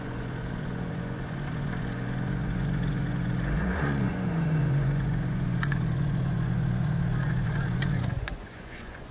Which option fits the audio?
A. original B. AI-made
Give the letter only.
B